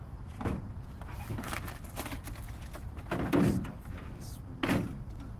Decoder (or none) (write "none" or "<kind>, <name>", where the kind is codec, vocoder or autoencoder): none